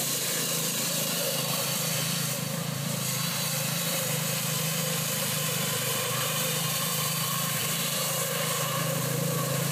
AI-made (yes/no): yes